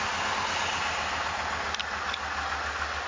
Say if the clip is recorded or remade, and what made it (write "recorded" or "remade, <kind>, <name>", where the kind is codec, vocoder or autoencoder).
recorded